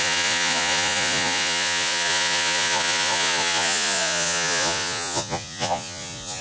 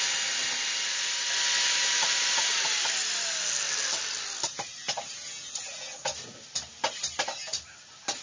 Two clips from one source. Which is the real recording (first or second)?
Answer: second